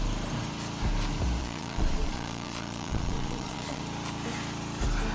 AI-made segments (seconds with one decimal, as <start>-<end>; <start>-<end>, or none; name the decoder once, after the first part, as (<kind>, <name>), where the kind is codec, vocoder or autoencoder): 1.4-3.8 (vocoder, Vocos)